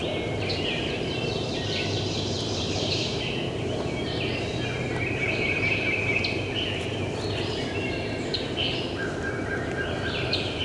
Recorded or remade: remade